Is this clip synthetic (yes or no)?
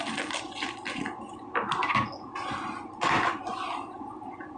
no